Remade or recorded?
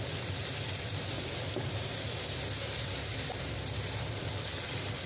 remade